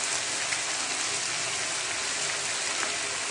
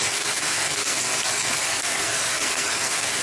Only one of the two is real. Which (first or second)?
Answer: first